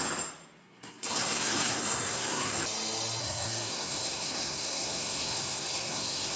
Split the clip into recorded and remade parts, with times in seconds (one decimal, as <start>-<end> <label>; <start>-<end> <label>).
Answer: 0.0-0.6 recorded; 0.6-2.6 remade; 2.6-3.2 recorded; 3.2-6.4 remade